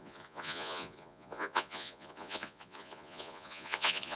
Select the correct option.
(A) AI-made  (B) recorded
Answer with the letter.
A